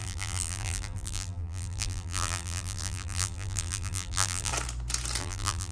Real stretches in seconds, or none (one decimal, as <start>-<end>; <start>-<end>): 4.5-5.2